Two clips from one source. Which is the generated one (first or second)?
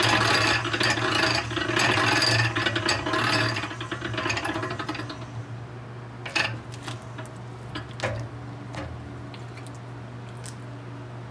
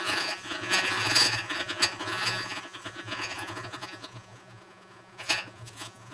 second